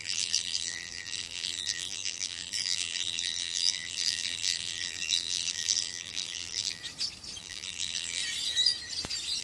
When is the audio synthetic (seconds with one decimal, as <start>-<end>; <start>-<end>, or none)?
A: 0.0-6.8; 7.4-8.2